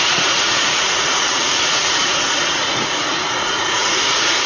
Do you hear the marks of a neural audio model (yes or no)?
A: yes